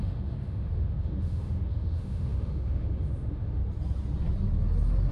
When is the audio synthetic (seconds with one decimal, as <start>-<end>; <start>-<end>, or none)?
0.0-3.6